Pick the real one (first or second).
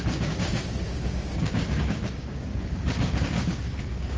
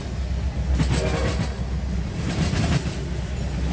second